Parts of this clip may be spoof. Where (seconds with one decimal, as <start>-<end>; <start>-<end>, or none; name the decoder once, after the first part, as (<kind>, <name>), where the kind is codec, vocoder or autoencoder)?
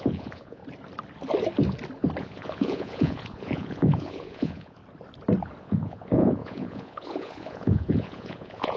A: 0.0-0.6 (vocoder, Vocos); 2.2-4.8; 5.6-8.8